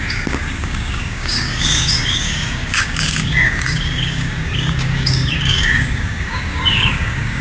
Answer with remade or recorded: remade